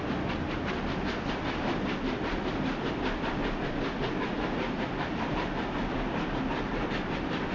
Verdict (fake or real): real